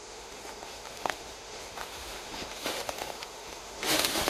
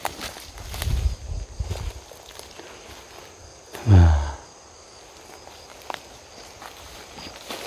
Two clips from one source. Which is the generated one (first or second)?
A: first